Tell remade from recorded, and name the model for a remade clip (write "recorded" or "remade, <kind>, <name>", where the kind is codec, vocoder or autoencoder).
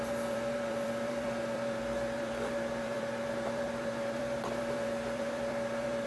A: remade, vocoder, BigVGAN v2